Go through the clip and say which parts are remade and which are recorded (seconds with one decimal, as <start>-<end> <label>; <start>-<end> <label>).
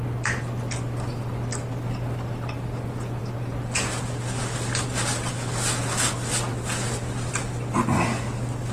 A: 0.0-8.7 recorded